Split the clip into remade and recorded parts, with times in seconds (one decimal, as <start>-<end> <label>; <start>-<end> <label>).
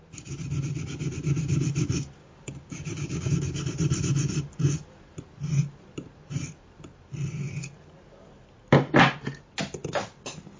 0.0-2.2 recorded; 2.2-3.3 remade; 3.3-10.6 recorded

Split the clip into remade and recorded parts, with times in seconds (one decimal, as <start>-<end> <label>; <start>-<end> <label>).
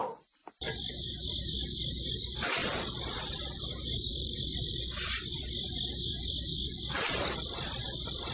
0.0-0.4 recorded; 0.4-0.9 remade; 0.9-2.6 recorded; 2.6-3.6 remade; 3.6-4.1 recorded; 4.1-5.2 remade; 5.2-8.3 recorded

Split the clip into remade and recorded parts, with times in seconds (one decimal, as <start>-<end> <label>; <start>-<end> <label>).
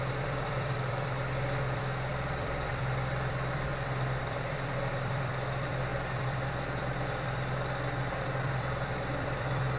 0.0-3.7 remade; 3.7-4.2 recorded; 4.2-9.8 remade